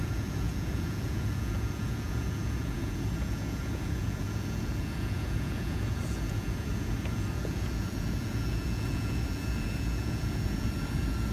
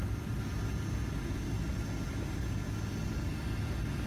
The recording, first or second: second